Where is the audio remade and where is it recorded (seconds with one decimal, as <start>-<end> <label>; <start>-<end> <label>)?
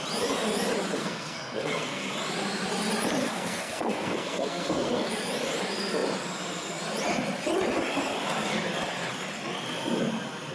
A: 0.0-1.0 recorded; 1.0-2.1 remade; 2.1-3.2 recorded; 3.2-5.1 remade; 5.1-10.5 recorded